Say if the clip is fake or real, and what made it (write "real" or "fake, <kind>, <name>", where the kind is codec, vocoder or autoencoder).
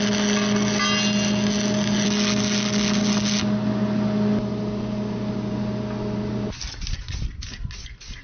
real